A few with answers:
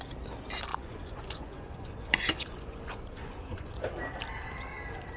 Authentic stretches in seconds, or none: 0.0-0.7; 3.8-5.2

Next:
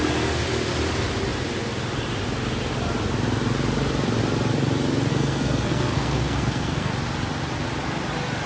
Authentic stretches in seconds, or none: 0.0-5.1; 6.9-8.5

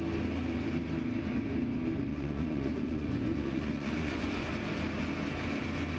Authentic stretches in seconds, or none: 0.0-2.1; 4.5-6.0